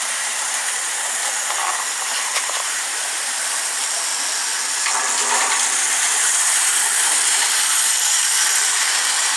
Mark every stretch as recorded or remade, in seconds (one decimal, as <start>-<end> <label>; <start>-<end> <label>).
0.0-1.2 remade; 1.2-2.0 recorded; 2.0-4.1 remade; 4.1-5.4 recorded; 5.4-9.4 remade